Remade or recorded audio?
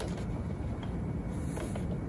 recorded